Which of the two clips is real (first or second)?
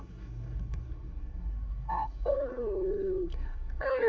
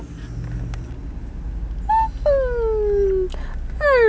second